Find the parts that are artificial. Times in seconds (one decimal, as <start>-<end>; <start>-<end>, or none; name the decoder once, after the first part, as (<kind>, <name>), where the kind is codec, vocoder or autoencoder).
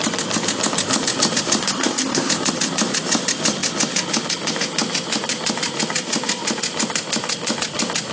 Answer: 1.6-2.3 (codec, SNAC)